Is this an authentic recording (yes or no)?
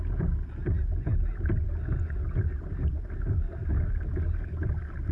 yes